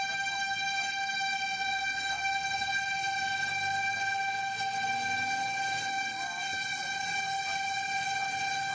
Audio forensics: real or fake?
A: real